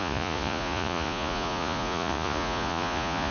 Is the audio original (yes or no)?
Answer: no